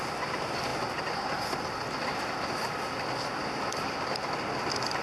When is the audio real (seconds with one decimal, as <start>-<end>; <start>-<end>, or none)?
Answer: 0.0-5.0